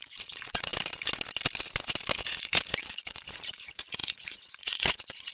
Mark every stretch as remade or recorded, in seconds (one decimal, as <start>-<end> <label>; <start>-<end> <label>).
0.0-0.7 remade; 0.7-2.2 recorded; 2.2-5.3 remade